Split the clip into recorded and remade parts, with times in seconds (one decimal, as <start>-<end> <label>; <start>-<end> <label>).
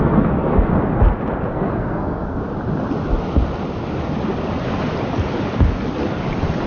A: 0.0-0.7 remade; 0.7-1.5 recorded; 1.5-2.4 remade; 2.4-6.7 recorded